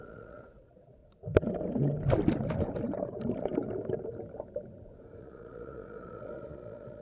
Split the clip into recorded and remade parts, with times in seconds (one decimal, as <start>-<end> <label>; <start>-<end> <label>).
0.0-1.0 remade; 1.0-5.2 recorded; 5.2-7.0 remade